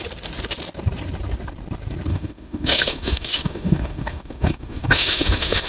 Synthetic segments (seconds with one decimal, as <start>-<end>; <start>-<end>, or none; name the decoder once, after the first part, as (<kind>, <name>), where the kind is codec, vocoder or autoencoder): 2.1-5.7 (autoencoder, DAC-VAE)